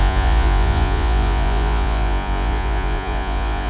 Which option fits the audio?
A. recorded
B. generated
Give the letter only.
B